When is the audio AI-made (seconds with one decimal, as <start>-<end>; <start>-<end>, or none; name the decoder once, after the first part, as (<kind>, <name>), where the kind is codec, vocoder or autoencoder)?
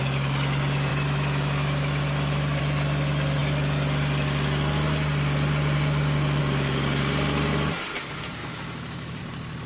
0.9-2.6 (autoencoder, DAC-VAE); 8.4-9.2